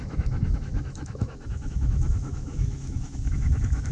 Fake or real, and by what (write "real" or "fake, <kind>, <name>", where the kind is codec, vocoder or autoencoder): fake, autoencoder, DAC-VAE